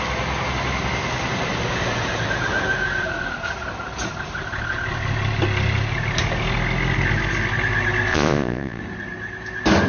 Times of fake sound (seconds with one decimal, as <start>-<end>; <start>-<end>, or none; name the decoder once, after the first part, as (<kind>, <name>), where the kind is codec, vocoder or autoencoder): 8.1-8.8 (vocoder, Vocos)